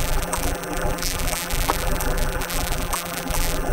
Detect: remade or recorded remade